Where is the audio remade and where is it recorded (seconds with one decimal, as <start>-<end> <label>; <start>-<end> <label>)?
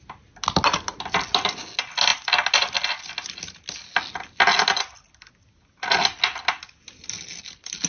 0.0-7.9 recorded